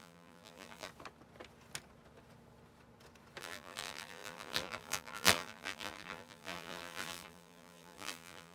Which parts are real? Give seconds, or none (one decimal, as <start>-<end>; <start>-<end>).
0.9-3.4